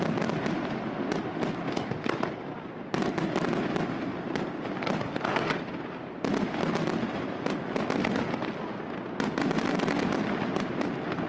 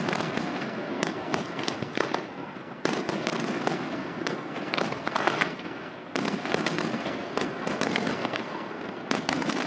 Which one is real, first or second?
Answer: first